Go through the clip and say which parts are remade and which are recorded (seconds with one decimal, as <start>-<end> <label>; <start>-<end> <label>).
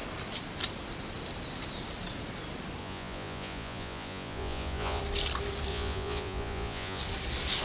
0.0-2.8 recorded; 2.8-5.0 remade; 5.0-5.7 recorded; 5.7-7.0 remade; 7.0-7.6 recorded